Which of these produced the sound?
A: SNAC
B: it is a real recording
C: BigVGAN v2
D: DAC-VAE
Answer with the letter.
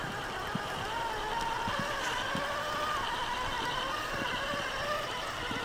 B